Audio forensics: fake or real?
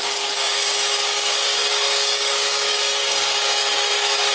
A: fake